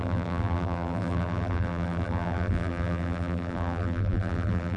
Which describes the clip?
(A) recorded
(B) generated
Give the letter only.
B